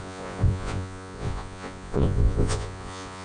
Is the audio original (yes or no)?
no